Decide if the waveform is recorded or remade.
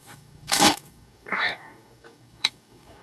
remade